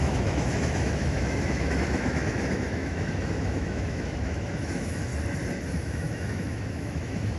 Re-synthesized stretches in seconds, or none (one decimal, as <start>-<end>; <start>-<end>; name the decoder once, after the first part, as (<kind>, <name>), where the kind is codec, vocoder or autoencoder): 0.0-5.1 (autoencoder, DAC-VAE); 5.7-7.4

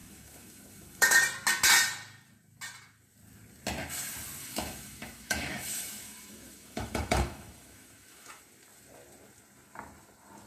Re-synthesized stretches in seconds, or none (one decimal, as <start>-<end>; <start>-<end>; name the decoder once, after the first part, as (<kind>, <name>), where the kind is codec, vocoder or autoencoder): 0.0-1.2 (autoencoder, DAC-VAE); 4.4-8.4

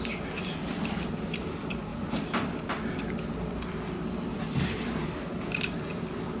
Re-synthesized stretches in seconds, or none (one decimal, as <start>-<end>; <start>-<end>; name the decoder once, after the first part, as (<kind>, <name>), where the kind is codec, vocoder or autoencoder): none

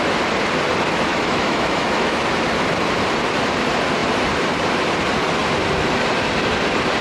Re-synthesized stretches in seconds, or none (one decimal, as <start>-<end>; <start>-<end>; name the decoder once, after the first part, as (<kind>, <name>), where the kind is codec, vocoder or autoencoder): 1.1-2.2 (autoencoder, DAC-VAE)

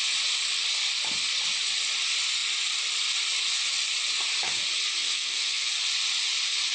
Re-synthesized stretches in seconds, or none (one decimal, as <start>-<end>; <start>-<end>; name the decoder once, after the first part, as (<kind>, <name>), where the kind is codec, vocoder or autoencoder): 5.0-5.7 (autoencoder, DAC-VAE)

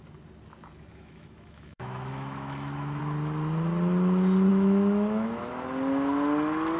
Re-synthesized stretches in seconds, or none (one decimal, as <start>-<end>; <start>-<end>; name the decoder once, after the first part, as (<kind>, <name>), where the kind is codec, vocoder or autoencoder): 0.9-3.0 (autoencoder, DAC-VAE); 4.5-5.5